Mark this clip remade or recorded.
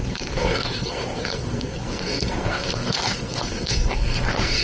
remade